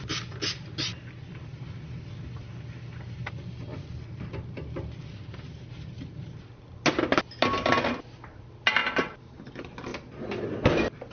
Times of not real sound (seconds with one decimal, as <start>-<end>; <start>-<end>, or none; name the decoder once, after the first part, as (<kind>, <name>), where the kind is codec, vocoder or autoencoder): none